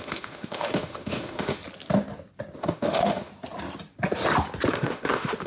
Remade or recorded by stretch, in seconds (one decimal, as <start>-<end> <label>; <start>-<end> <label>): 0.0-1.6 remade; 1.6-2.6 recorded; 2.6-3.3 remade; 3.3-4.7 recorded; 4.7-5.5 remade